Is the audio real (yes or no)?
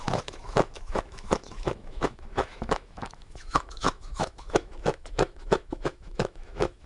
no